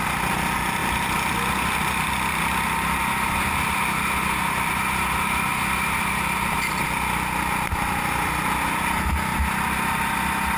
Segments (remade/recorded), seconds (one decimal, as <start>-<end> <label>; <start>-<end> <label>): 0.0-10.6 recorded